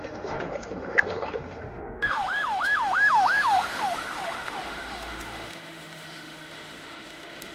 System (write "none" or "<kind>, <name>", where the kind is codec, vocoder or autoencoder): autoencoder, DAC-VAE